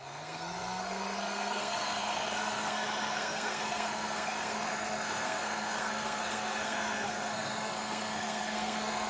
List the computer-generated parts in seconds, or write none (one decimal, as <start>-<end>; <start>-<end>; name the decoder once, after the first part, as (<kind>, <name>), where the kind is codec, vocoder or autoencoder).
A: 0.0-9.1 (codec, SNAC)